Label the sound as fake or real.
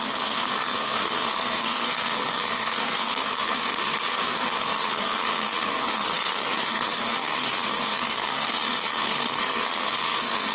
fake